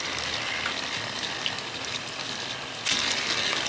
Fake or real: real